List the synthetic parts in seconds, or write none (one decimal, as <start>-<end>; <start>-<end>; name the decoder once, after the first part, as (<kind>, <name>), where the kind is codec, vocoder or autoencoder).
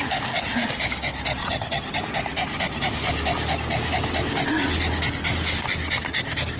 1.4-2.0 (vocoder, HiFi-GAN)